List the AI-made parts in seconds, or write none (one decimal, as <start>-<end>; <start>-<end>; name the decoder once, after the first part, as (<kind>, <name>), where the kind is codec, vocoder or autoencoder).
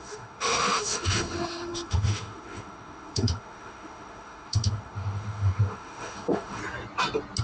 0.0-6.6 (autoencoder, DAC-VAE)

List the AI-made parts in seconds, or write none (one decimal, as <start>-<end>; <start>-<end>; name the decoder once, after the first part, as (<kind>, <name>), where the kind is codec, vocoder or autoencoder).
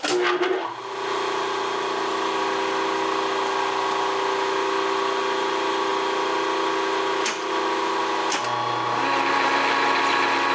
none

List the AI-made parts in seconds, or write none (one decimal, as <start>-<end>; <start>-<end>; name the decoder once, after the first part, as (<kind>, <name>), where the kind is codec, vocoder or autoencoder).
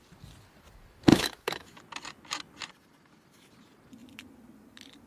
1.1-1.8 (autoencoder, DAC-VAE)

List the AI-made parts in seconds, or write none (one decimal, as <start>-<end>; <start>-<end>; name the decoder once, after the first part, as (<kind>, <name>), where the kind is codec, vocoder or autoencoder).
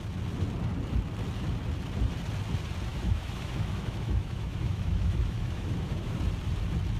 2.9-6.2 (autoencoder, DAC-VAE)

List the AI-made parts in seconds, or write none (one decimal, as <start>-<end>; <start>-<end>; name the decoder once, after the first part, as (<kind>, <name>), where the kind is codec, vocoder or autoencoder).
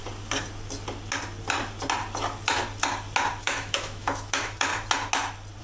3.4-4.7 (autoencoder, DAC-VAE)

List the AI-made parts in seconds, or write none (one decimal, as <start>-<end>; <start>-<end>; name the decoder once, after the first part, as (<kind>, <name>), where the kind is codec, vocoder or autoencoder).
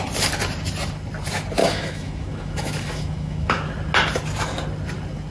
1.6-3.7 (autoencoder, DAC-VAE)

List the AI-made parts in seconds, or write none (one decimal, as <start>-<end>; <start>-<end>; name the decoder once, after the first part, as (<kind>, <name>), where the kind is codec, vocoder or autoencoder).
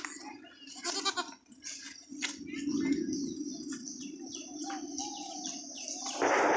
none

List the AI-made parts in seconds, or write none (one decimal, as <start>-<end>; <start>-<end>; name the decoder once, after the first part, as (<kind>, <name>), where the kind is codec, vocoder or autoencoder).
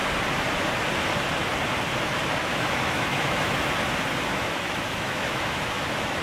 2.5-3.7 (autoencoder, DAC-VAE); 4.3-6.2